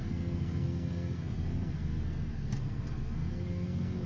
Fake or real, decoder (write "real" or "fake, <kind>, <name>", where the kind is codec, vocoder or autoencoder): fake, codec, SNAC